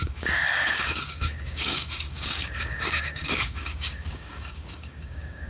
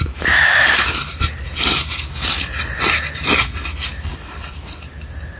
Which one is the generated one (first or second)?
first